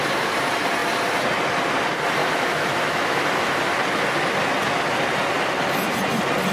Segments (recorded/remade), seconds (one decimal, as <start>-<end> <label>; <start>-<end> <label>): 0.0-2.2 recorded; 2.2-3.6 remade; 3.6-6.5 recorded